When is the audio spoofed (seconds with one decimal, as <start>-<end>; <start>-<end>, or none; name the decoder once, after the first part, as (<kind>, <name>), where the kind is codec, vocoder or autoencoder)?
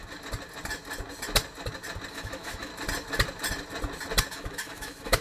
2.1-2.7 (autoencoder, DAC-VAE); 4.3-5.2